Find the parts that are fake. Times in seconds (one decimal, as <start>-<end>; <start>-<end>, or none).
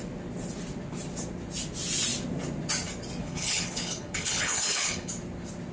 3.2-5.1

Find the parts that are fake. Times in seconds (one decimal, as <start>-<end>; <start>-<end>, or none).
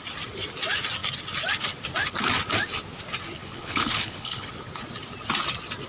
3.4-4.5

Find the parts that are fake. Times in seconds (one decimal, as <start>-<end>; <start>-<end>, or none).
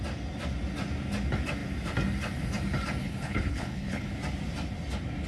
3.0-4.1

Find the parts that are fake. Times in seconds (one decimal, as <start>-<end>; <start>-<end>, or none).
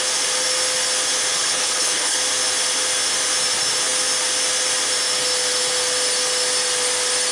1.3-2.2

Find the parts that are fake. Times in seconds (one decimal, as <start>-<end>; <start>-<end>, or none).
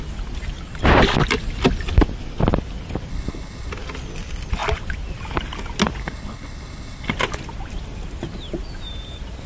3.1-3.7; 6.0-7.1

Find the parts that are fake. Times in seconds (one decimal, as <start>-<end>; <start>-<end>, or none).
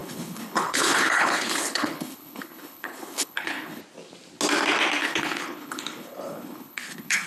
0.0-3.8; 5.0-7.3